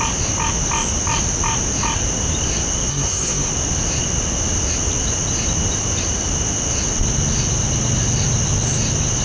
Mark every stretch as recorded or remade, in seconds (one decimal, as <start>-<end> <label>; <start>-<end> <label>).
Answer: 0.0-2.9 recorded; 2.9-3.5 remade; 3.5-9.2 recorded